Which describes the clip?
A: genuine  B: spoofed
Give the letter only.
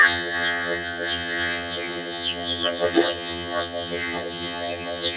B